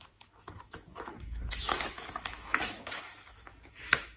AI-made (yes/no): yes